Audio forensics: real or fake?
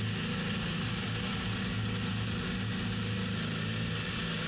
real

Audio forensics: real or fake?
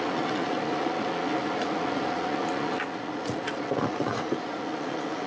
fake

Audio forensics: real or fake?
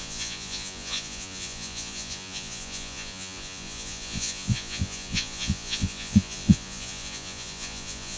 fake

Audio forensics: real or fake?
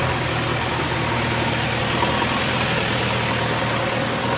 real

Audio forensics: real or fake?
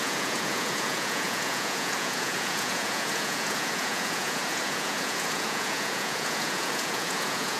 fake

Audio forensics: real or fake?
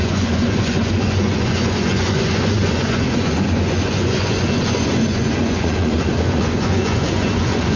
fake